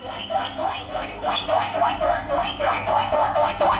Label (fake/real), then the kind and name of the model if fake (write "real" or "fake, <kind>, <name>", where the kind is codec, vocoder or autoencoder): fake, codec, SNAC